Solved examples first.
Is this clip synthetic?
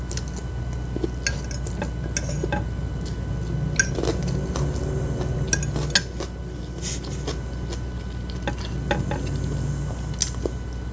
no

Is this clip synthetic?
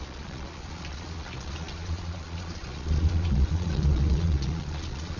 yes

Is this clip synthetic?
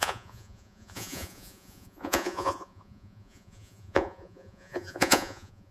yes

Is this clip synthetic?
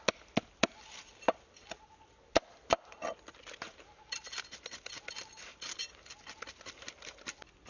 no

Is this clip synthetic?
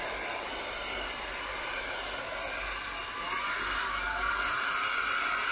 no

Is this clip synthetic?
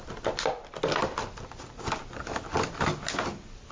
no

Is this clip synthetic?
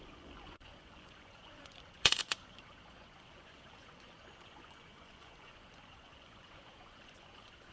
yes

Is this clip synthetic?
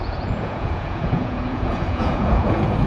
yes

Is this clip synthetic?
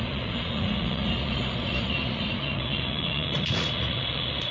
yes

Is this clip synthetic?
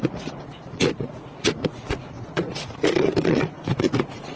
yes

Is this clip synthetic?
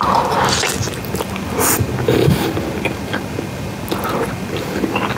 no